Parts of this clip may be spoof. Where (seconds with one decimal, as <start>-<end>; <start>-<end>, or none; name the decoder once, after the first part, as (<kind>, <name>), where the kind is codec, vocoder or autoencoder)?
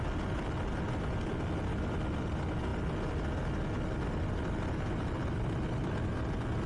none